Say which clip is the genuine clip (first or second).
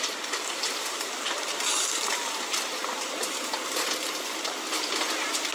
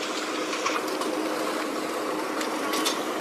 second